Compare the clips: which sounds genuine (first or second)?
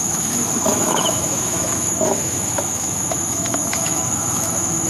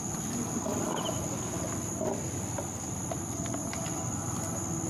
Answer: second